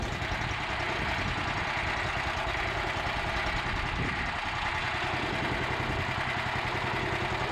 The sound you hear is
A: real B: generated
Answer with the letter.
A